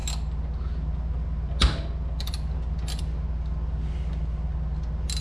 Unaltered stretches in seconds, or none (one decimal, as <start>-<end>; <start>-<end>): 0.0-5.2

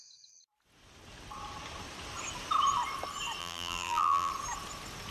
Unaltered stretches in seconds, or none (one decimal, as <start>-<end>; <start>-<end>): 0.0-3.4; 4.3-5.1

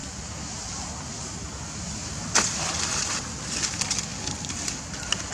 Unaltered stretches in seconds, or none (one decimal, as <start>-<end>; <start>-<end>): 0.0-2.7

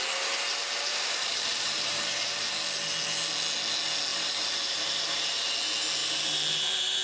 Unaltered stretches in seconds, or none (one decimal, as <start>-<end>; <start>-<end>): 0.0-0.9; 2.5-4.1; 5.5-6.0